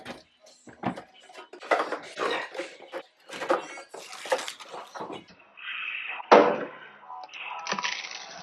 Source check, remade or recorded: recorded